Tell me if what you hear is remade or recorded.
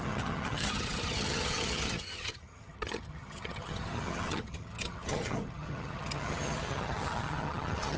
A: remade